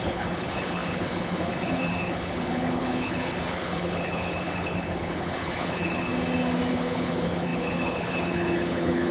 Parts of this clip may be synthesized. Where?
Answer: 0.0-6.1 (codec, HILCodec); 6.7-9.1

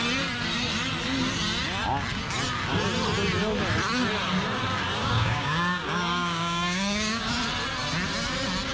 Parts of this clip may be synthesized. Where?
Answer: 5.0-7.3 (codec, DAC)

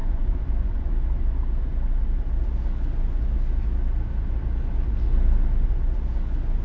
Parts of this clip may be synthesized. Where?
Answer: 0.0-0.9 (vocoder, Vocos)

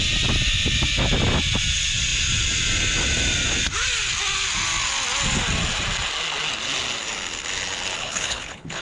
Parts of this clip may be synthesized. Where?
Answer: 8.0-8.8 (codec, HILCodec)

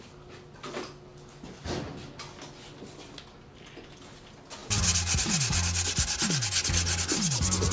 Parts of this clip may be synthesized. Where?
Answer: none

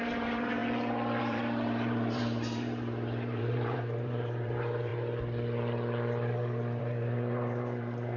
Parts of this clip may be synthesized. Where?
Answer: 0.0-0.6 (vocoder, BigVGAN v2); 1.2-4.9; 6.8-8.2

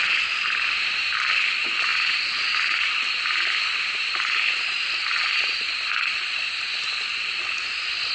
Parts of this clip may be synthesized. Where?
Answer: none

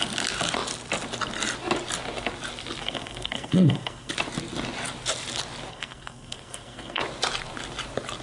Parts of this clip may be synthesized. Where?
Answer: 2.8-4.1 (codec, SNAC); 5.7-7.0